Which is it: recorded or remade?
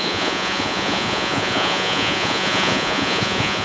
remade